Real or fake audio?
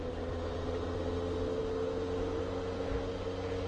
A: real